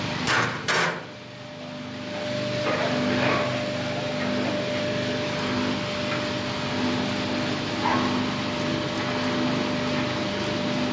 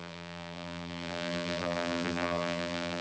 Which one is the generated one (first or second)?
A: second